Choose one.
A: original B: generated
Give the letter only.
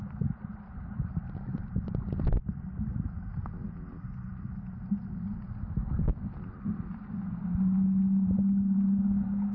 A